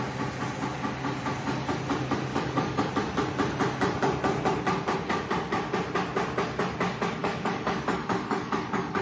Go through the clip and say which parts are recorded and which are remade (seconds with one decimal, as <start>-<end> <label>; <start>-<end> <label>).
0.0-2.3 recorded; 2.3-2.9 remade; 2.9-7.2 recorded; 7.2-9.0 remade